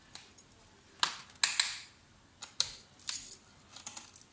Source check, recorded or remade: recorded